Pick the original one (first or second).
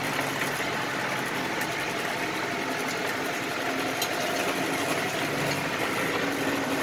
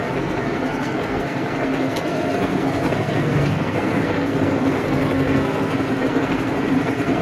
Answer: first